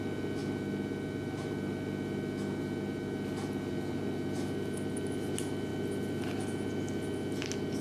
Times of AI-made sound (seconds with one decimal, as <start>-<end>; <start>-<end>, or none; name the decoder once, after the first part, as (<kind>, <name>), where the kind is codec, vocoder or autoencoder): none